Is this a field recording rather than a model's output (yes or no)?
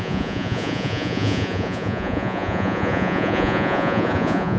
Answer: no